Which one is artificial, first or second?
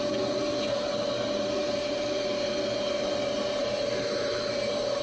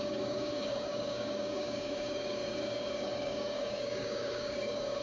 second